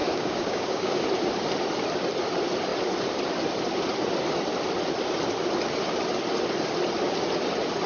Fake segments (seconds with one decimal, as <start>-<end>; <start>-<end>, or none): 0.0-1.0